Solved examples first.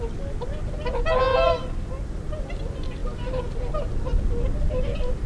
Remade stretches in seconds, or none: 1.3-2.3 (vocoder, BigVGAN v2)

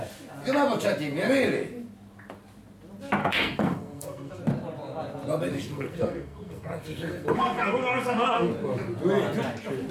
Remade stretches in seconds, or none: 3.2-4.4 (codec, SNAC); 5.5-8.5

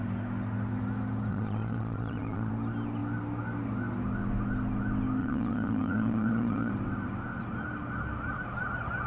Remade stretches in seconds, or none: 1.3-2.5 (vocoder, Vocos); 5.2-6.7

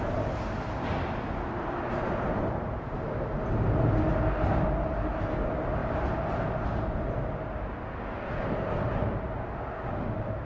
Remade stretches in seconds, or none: none